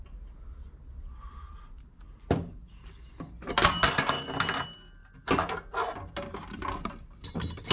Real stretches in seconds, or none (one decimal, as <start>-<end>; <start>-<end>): 0.0-7.7